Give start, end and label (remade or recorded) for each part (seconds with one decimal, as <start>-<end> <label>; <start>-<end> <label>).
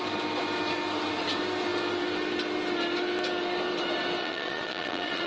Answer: 0.0-4.2 recorded; 4.2-5.3 remade